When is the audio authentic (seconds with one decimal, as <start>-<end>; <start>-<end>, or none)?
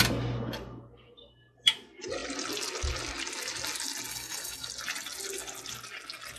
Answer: 0.0-4.1; 4.7-6.4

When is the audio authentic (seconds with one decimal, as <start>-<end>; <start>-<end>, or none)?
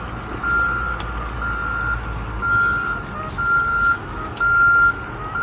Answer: 0.0-3.7; 4.9-5.4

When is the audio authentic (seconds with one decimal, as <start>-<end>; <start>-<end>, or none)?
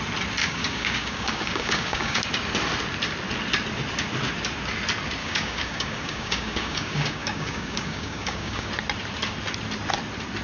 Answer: 0.0-0.4; 2.2-5.2; 8.7-10.4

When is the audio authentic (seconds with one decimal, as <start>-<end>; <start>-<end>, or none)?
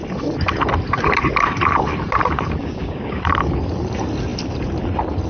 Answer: 0.0-2.6; 3.2-5.3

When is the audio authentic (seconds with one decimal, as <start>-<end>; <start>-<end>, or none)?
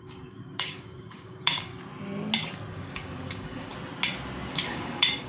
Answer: 1.7-2.7; 3.7-4.5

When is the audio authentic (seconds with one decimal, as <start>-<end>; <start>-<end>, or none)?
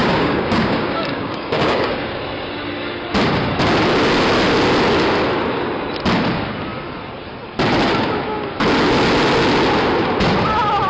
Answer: 2.2-10.9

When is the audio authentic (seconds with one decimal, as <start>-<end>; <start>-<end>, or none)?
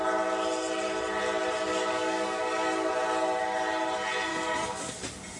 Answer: 0.0-1.7; 2.9-4.3; 4.9-5.4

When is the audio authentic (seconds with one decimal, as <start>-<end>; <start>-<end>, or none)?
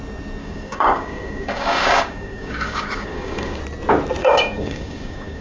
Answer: 0.0-0.4; 3.6-4.2